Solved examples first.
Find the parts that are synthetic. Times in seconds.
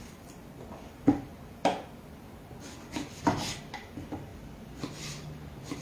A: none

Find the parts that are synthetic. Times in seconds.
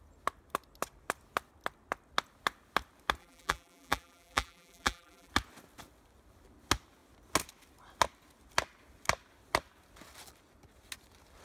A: 3.2-5.3 (vocoder, BigVGAN v2)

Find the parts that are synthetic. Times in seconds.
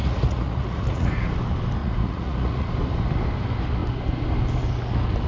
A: 0.0-1.1 (vocoder, Vocos); 1.8-2.7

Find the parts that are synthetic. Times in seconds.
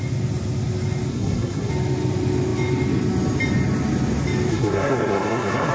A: 1.1-1.7 (codec, SNAC); 4.5-5.7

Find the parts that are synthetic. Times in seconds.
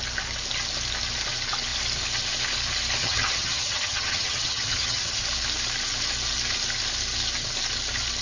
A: 3.0-5.2 (vocoder, HiFi-GAN)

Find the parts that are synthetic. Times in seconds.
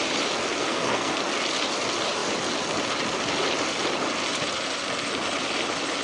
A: 0.6-1.2 (codec, SNAC)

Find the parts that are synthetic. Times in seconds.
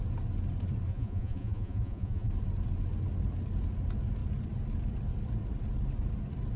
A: 0.9-2.3 (vocoder, Vocos)